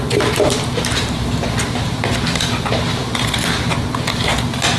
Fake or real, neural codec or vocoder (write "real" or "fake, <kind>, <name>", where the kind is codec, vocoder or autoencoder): real